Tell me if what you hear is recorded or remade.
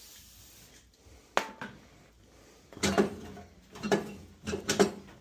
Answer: recorded